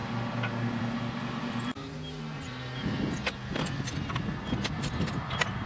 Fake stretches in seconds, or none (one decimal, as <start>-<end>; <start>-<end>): 0.7-1.7; 5.1-5.7